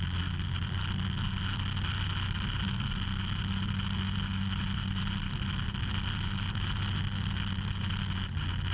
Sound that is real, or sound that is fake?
real